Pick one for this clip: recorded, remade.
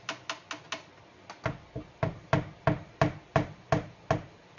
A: recorded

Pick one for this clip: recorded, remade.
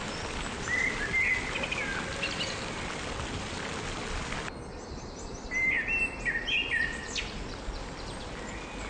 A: recorded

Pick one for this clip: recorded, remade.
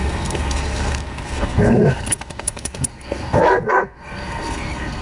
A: remade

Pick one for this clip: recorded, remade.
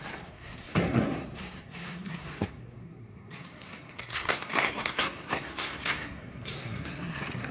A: remade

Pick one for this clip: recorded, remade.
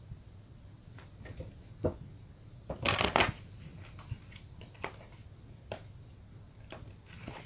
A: recorded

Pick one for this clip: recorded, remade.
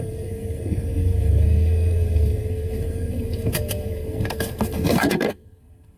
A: remade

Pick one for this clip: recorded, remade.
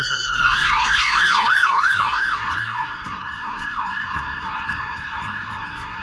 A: remade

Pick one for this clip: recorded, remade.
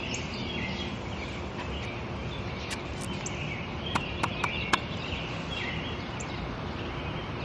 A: recorded